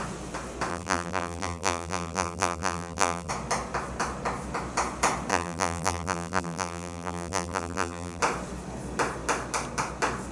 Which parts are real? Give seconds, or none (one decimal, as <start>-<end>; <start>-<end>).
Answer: 0.0-0.7; 3.3-5.3; 8.2-10.3